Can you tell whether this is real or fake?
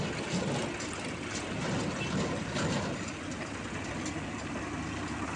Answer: real